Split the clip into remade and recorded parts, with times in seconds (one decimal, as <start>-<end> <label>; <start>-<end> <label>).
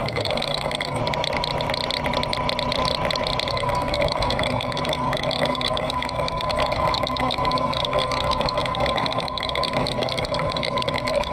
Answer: 0.0-1.0 remade; 1.0-3.5 recorded; 3.5-11.3 remade